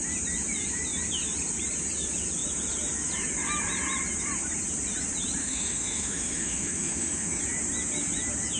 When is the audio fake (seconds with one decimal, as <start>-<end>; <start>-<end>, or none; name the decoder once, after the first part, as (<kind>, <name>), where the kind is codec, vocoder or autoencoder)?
5.4-7.4 (autoencoder, DAC-VAE)